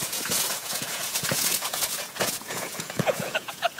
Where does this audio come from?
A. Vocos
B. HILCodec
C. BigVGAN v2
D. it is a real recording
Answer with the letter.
A